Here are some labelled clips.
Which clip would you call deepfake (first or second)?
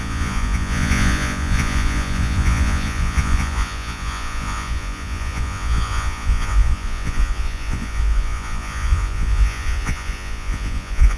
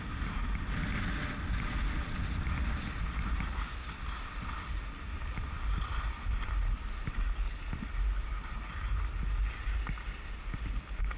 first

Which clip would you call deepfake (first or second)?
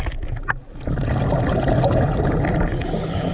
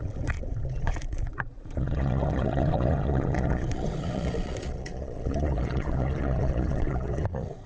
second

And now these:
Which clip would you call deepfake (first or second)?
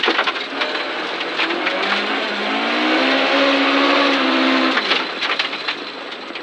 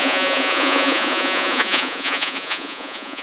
second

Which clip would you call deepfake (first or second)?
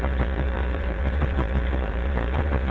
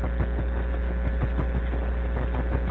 first